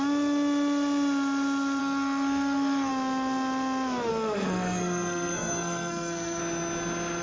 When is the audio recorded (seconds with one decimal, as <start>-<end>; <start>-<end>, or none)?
0.0-1.8; 2.9-4.1; 6.4-7.2